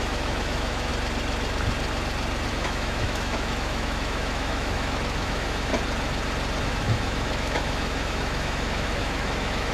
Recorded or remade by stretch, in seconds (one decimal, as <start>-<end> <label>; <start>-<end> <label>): 0.0-0.9 remade; 0.9-2.5 recorded; 2.5-5.7 remade; 5.7-6.6 recorded; 6.6-9.7 remade